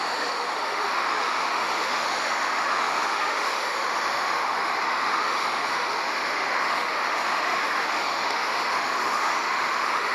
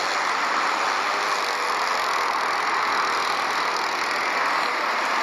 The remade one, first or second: first